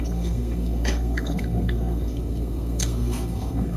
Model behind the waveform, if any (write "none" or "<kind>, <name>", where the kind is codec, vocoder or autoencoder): codec, SNAC